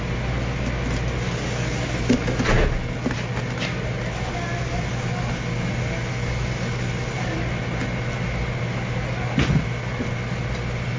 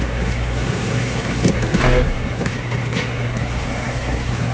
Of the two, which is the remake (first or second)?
second